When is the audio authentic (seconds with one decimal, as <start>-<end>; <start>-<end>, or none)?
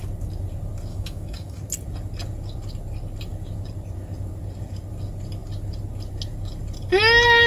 0.0-0.9; 1.6-7.5